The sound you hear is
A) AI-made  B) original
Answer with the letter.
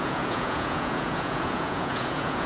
A